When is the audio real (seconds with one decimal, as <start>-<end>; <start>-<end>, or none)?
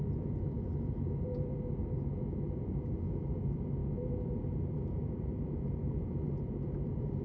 none